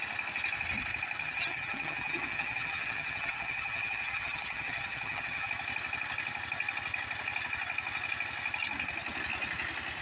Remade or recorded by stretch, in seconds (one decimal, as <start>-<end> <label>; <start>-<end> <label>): 0.0-1.2 recorded; 1.2-5.5 remade; 5.5-10.0 recorded